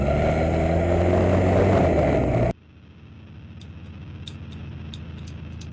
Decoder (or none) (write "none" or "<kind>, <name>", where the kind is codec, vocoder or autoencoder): none